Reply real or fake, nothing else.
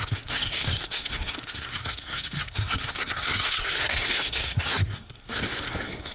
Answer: fake